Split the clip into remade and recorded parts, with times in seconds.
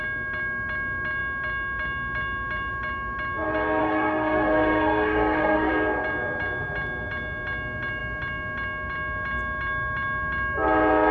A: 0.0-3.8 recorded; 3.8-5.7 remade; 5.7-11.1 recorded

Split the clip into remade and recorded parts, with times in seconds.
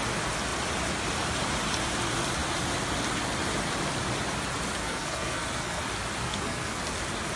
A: 0.0-4.8 recorded; 4.8-5.8 remade; 5.8-6.2 recorded; 6.2-6.8 remade; 6.8-7.4 recorded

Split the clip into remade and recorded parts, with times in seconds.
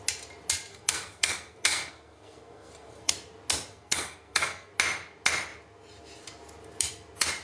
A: 0.0-0.7 recorded; 0.7-3.1 remade; 3.1-3.7 recorded; 3.7-4.7 remade; 4.7-7.4 recorded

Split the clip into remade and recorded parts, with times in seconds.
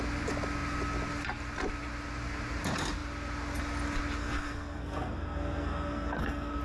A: 0.0-4.2 recorded; 4.2-6.6 remade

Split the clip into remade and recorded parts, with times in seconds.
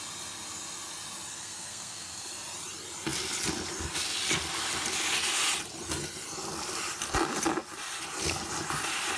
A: 0.0-1.3 recorded; 1.3-2.3 remade; 2.3-9.2 recorded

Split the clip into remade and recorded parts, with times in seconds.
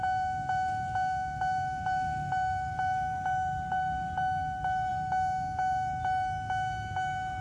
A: 0.0-7.4 recorded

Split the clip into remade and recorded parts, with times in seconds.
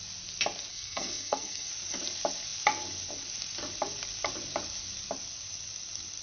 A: 0.0-0.7 recorded; 0.7-1.7 remade; 1.7-6.2 recorded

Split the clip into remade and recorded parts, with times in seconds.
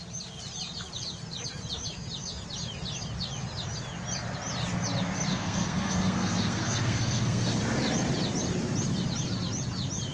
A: 0.0-5.3 recorded; 5.3-7.6 remade; 7.6-10.1 recorded